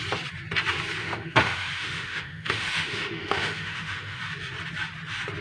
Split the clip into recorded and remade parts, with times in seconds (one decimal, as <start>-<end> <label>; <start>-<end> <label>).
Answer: 0.0-1.0 recorded; 1.0-4.2 remade; 4.2-5.4 recorded